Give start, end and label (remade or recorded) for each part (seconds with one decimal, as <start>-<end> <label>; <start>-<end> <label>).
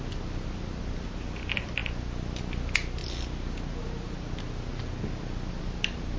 0.0-6.2 recorded